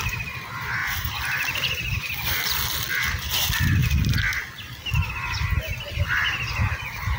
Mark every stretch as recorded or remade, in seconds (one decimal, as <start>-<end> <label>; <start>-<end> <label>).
0.0-0.8 recorded; 0.8-2.0 remade; 2.0-7.2 recorded